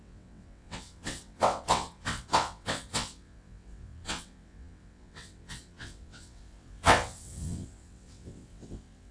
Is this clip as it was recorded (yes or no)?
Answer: no